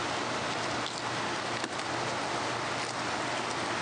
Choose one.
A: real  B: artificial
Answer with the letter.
A